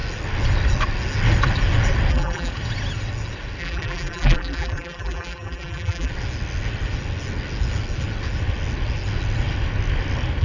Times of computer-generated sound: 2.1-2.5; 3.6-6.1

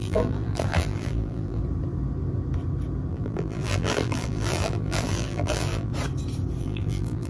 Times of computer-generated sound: 0.0-1.6; 3.1-5.9; 6.6-7.3

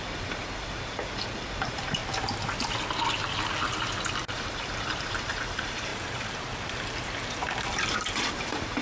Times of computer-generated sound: 0.0-2.0; 4.3-5.9; 7.7-8.8

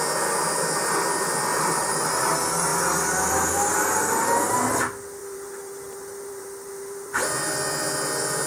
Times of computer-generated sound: 1.5-2.3; 5.2-7.2

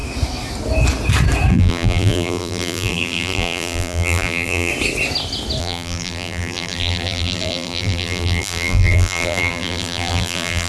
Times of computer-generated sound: 1.5-4.7; 5.6-10.7

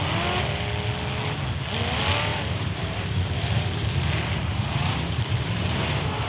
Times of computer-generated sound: 2.3-6.3

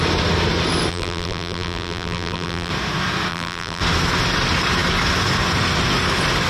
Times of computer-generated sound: 0.9-2.7; 3.3-3.8